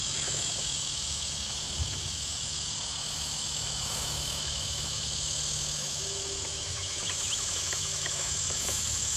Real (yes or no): no